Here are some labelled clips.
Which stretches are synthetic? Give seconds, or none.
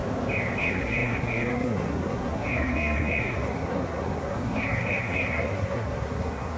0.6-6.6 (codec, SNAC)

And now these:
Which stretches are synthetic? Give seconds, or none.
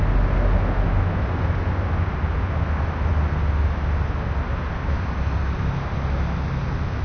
none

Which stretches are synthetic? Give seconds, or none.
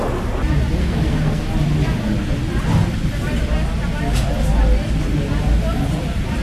0.8-1.4 (codec, SNAC)